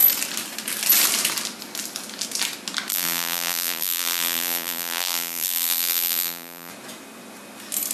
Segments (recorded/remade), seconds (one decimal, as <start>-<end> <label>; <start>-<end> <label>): 0.0-2.9 recorded; 2.9-6.7 remade; 6.7-7.9 recorded

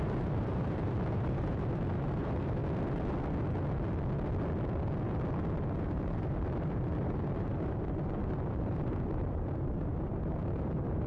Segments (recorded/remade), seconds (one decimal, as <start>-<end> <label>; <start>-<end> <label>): 0.0-2.6 remade; 2.6-5.8 recorded; 5.8-11.1 remade

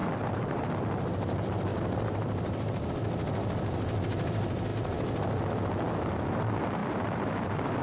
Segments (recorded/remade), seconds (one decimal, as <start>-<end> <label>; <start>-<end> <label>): 0.0-0.7 remade; 0.7-1.7 recorded; 1.7-2.9 remade; 2.9-6.8 recorded; 6.8-7.8 remade

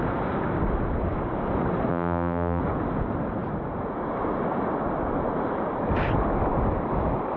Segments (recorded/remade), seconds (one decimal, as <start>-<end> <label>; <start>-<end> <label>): 0.0-1.9 recorded; 1.9-2.6 remade; 2.6-7.4 recorded

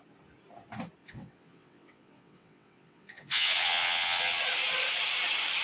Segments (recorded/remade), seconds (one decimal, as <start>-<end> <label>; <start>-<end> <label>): 0.0-1.0 recorded; 1.0-4.4 remade; 4.4-5.6 recorded

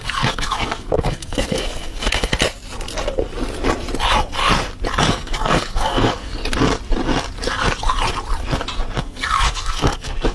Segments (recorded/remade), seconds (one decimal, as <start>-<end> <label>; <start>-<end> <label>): 0.0-2.3 remade; 2.3-5.1 recorded; 5.1-6.3 remade; 6.3-9.0 recorded; 9.0-10.3 remade

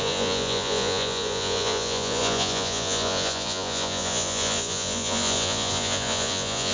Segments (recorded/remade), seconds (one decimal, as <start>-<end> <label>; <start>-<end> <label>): 0.0-6.7 remade

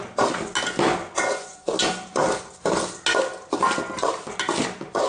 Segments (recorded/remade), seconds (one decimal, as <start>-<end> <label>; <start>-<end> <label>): 0.0-1.0 recorded; 1.0-1.7 remade; 1.7-5.1 recorded